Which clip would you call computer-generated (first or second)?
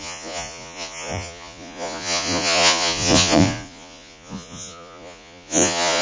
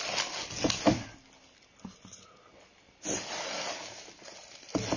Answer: first